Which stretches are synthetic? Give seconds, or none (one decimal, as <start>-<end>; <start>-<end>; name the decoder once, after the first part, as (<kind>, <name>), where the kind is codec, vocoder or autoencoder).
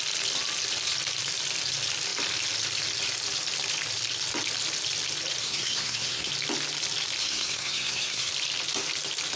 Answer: 5.4-6.3 (codec, SNAC); 7.2-8.3